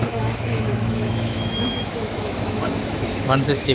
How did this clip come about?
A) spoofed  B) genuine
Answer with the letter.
A